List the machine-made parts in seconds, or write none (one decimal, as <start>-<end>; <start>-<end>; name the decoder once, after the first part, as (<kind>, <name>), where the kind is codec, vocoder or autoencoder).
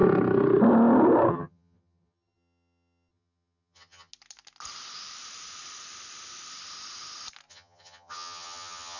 1.3-4.1 (vocoder, HiFi-GAN); 7.5-9.0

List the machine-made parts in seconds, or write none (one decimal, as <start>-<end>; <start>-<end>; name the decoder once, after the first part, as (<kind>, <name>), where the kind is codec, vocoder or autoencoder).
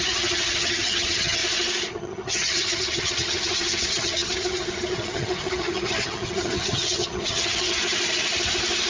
0.0-1.4 (vocoder, HiFi-GAN); 1.9-7.8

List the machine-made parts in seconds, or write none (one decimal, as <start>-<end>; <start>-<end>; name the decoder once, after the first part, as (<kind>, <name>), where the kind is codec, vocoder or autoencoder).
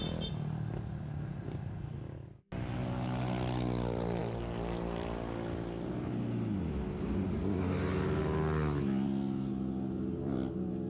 none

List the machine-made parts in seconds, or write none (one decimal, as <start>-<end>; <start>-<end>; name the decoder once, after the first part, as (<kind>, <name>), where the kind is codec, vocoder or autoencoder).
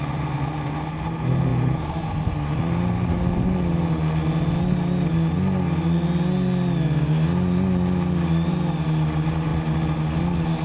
none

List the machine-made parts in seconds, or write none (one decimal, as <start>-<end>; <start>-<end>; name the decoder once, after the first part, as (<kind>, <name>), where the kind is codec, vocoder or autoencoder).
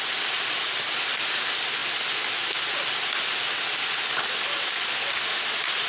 none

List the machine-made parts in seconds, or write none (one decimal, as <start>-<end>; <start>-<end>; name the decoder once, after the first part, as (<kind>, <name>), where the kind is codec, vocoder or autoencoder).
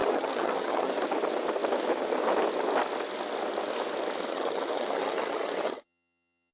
0.0-0.9 (vocoder, HiFi-GAN); 4.3-6.5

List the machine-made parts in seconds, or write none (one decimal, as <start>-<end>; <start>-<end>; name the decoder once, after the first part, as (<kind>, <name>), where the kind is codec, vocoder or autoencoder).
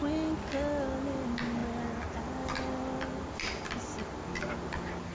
none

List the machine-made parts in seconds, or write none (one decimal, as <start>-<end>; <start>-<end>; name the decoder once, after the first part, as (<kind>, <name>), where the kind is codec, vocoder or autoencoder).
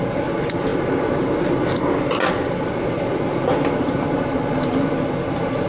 none